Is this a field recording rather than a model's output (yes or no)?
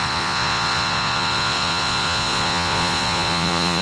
no